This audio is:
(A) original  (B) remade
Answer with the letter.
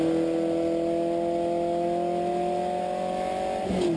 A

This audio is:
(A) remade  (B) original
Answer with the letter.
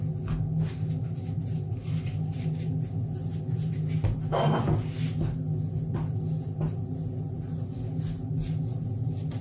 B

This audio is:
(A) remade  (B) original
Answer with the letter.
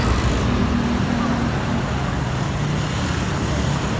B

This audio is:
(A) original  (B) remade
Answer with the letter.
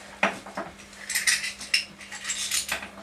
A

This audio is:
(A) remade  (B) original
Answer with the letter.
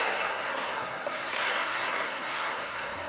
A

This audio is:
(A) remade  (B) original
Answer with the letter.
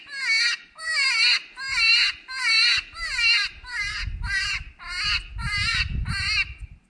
B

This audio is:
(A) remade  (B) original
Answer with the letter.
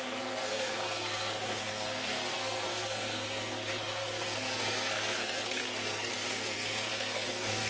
A